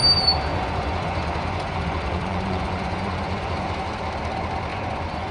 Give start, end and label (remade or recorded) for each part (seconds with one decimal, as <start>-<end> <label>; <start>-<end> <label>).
0.0-0.5 recorded; 0.5-3.7 remade; 3.7-4.7 recorded; 4.7-5.3 remade